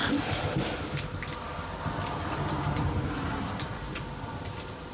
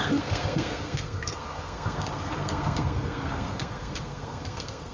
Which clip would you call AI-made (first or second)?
second